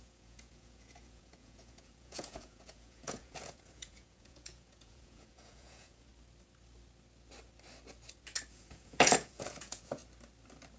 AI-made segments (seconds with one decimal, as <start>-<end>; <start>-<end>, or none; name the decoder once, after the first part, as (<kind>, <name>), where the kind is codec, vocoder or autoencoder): 0.0-6.1 (vocoder, Vocos); 8.5-10.0